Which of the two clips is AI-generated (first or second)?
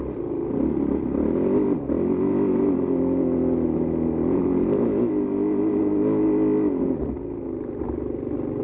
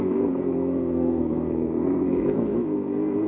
second